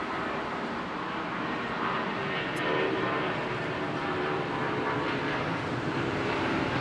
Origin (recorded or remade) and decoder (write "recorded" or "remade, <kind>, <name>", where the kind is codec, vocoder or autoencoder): remade, vocoder, BigVGAN v2